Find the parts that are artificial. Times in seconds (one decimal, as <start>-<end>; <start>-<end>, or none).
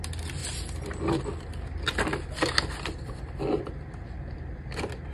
none